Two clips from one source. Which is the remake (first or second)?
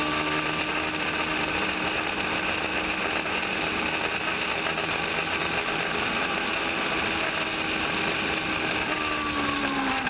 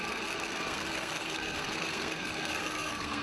second